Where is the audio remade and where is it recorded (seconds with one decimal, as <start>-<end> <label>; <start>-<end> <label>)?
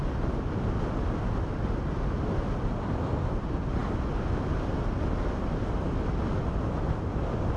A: 0.0-7.6 recorded